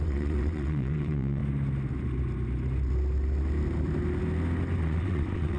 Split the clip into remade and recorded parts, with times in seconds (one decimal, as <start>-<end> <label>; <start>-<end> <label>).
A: 0.0-1.4 remade; 1.4-4.8 recorded; 4.8-5.6 remade